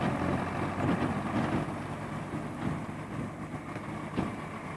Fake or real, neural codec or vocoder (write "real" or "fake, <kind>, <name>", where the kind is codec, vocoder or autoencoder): real